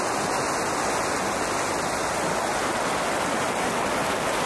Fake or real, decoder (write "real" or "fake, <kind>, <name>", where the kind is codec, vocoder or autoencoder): real